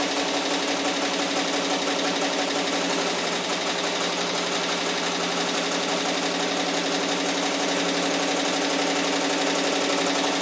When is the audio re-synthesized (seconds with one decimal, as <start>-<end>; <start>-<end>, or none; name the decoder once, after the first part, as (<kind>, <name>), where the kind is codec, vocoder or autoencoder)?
none

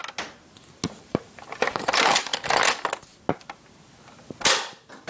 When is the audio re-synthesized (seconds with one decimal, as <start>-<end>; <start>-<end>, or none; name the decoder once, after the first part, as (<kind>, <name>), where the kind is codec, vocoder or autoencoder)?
1.0-2.3 (vocoder, BigVGAN v2)

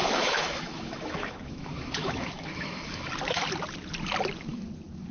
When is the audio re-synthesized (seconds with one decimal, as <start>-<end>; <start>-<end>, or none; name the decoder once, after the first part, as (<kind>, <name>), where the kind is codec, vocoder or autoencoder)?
0.0-3.1 (autoencoder, DAC-VAE)

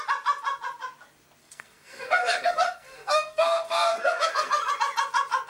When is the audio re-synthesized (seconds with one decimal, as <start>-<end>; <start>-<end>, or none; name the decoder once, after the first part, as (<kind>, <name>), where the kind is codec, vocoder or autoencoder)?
1.4-4.7 (codec, SNAC)

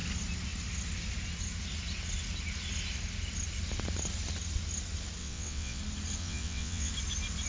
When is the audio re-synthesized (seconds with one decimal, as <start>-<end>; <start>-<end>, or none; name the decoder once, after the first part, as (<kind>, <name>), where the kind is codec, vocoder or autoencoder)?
5.2-5.8 (vocoder, WaveNeXt); 6.2-6.9

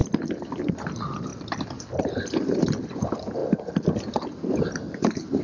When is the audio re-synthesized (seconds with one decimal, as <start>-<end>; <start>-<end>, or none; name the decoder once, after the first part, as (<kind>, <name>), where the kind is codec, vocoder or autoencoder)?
none

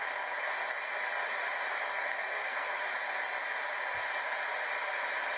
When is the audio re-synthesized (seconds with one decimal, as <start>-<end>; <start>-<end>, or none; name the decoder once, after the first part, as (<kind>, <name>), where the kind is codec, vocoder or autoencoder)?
1.9-2.7 (codec, SNAC)